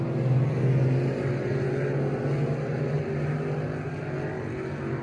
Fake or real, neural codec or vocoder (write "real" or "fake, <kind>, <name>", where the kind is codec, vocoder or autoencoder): real